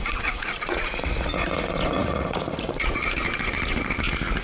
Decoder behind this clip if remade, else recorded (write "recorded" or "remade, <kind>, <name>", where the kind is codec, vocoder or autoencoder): remade, vocoder, Vocos